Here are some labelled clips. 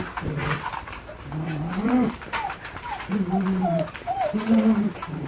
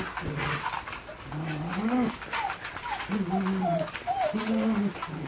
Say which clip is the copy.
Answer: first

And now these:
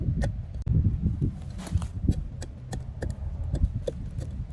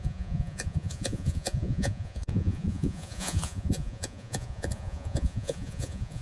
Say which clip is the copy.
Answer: second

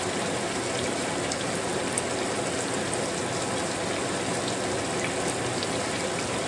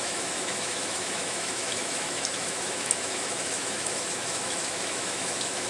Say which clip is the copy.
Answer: second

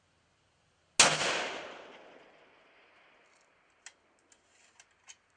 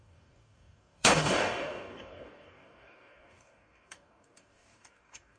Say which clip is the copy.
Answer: second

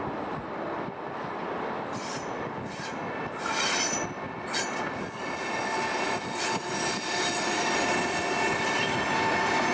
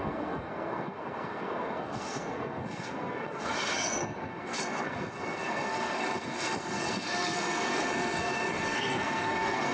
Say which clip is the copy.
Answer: second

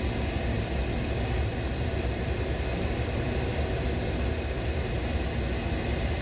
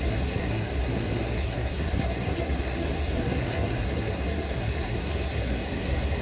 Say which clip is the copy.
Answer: second